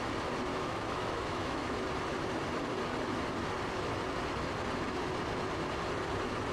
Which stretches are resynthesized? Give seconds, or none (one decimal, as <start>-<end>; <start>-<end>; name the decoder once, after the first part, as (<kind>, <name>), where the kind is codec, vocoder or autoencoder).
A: 0.5-1.8 (autoencoder, DAC-VAE)

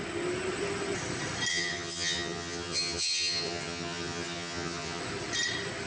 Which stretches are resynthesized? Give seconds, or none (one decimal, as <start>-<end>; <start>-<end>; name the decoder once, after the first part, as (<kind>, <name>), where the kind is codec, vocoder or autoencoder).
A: 1.5-5.0 (vocoder, HiFi-GAN)

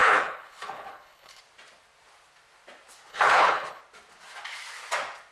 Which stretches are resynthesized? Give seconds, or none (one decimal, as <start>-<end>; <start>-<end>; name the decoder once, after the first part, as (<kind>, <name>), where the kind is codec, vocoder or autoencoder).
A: 0.0-1.4 (codec, HILCodec); 3.1-3.8

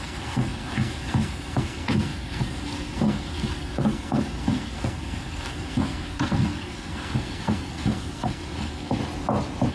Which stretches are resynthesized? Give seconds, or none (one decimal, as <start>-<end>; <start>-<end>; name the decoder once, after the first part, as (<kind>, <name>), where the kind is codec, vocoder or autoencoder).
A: 0.0-9.0 (codec, SNAC)

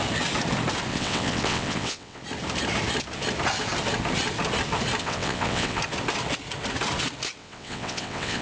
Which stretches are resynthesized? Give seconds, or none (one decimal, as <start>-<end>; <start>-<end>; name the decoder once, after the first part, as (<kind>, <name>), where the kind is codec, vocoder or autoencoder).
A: 0.9-2.2 (vocoder, WaveNeXt); 5.0-5.8; 7.4-8.4